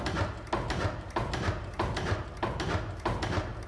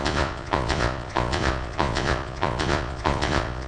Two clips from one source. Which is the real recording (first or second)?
first